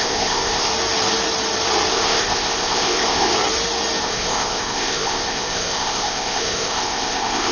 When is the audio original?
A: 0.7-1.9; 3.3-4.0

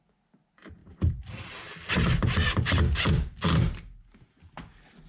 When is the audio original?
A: 0.0-5.1

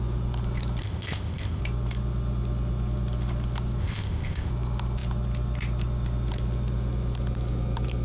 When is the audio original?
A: 0.0-0.8; 1.6-3.8; 4.5-8.0